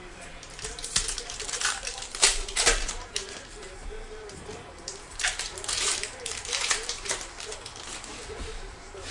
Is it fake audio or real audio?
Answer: fake